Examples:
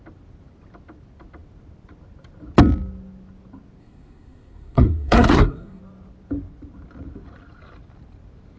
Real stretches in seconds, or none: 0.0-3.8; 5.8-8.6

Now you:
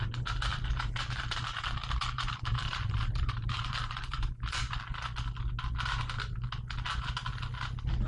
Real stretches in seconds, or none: 0.0-0.5; 4.8-8.1

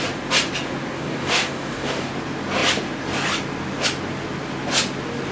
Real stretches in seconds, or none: 0.0-0.9; 2.1-5.3

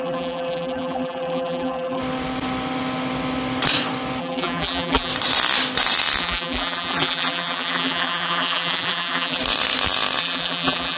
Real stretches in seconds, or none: 2.0-4.2; 5.1-6.2; 9.4-10.2

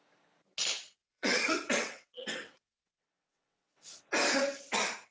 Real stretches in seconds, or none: 0.0-1.0; 4.1-5.1